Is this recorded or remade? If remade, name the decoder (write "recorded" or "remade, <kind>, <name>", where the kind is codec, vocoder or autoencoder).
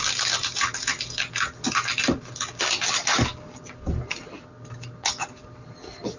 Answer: recorded